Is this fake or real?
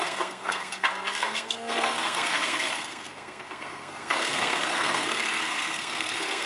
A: fake